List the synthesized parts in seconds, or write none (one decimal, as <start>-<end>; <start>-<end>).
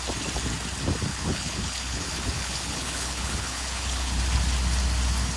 1.1-4.2